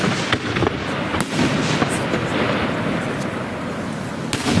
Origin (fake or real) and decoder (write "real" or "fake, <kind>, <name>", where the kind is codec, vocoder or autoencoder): real